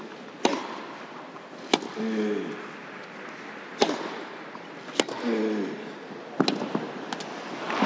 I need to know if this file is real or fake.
real